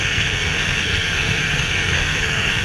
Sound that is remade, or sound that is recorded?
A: remade